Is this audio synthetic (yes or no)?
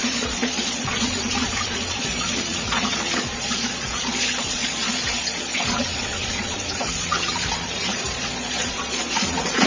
yes